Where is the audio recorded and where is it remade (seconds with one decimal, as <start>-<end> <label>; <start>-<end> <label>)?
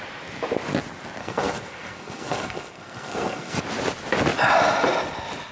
0.0-1.2 recorded; 1.2-3.6 remade; 3.6-5.5 recorded